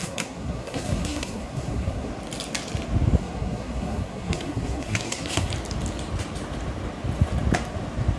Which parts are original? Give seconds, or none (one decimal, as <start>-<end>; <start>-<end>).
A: 2.1-3.2; 5.5-8.2